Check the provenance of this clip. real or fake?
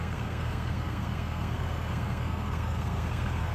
fake